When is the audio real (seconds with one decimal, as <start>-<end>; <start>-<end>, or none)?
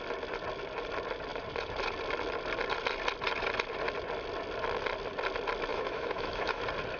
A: 0.0-5.7; 6.6-7.0